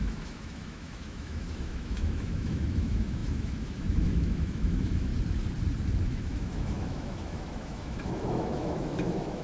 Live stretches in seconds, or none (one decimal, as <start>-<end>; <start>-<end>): 5.1-6.0